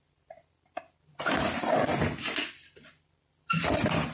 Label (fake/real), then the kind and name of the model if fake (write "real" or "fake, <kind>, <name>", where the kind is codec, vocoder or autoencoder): real